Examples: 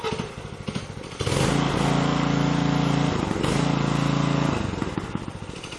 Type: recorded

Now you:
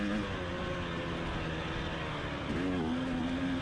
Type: recorded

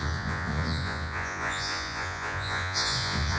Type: remade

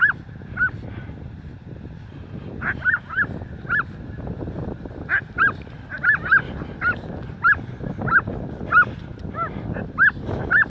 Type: recorded